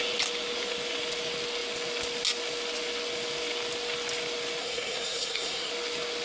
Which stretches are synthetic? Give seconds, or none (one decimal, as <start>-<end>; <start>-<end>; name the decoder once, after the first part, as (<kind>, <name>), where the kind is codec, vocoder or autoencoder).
4.6-5.7 (codec, SNAC)